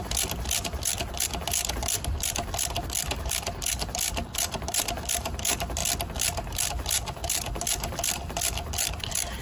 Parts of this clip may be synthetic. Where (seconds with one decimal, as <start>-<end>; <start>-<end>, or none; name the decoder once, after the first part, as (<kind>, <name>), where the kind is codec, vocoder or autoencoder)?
0.0-5.8 (vocoder, BigVGAN v2); 6.7-9.4